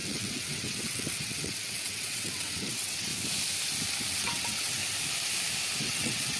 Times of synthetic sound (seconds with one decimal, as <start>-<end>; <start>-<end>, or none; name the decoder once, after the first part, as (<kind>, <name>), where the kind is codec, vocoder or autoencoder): 0.0-3.1 (vocoder, WaveNeXt); 4.1-4.8; 5.8-6.4